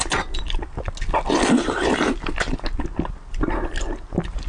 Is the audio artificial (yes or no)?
no